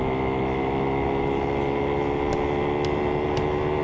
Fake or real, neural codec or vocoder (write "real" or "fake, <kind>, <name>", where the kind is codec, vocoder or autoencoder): real